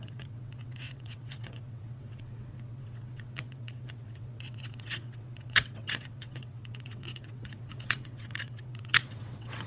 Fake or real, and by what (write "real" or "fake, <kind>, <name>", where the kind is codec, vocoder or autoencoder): fake, vocoder, WaveNeXt